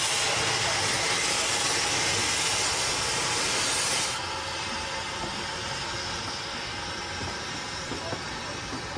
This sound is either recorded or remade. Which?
recorded